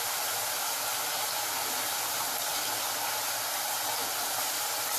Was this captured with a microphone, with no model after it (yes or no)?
yes